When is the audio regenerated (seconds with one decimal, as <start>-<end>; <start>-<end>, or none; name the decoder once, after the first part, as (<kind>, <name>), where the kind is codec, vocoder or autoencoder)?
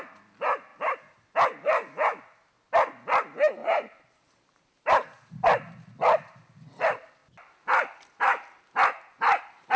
3.6-5.3 (vocoder, BigVGAN v2)